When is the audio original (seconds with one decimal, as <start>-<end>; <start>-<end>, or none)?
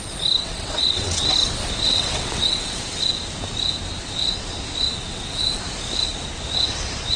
0.0-0.4; 1.2-1.9; 3.0-5.1; 5.6-7.2